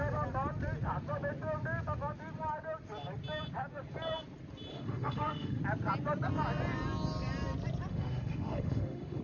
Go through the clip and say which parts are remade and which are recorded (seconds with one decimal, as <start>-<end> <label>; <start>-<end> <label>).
0.0-4.7 recorded; 4.7-5.6 remade; 5.6-7.9 recorded; 7.9-9.2 remade